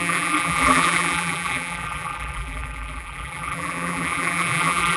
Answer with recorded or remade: remade